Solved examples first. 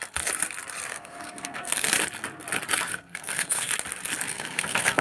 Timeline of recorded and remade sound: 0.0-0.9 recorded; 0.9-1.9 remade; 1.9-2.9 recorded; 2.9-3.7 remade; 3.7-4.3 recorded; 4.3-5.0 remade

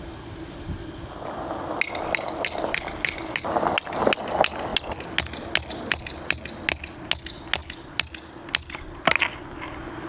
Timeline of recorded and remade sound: 0.0-10.1 recorded

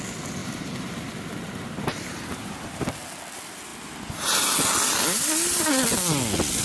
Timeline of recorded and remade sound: 0.0-0.4 recorded; 0.4-3.0 remade; 3.0-6.6 recorded

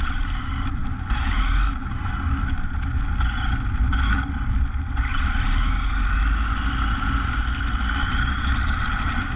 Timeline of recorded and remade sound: 0.0-9.4 recorded

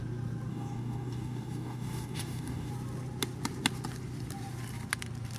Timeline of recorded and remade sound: 0.0-0.5 recorded; 0.5-2.7 remade; 2.7-5.4 recorded

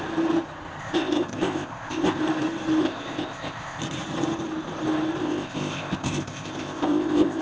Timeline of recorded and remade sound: 0.0-0.8 recorded; 0.8-2.2 remade; 2.2-2.8 recorded; 2.8-3.8 remade; 3.8-5.2 recorded; 5.2-7.4 remade